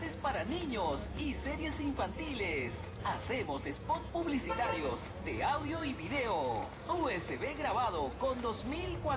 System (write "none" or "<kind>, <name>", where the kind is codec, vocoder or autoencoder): vocoder, Vocos